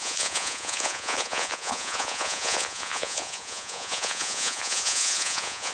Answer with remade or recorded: remade